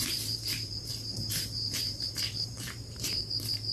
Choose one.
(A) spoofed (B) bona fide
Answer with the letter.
A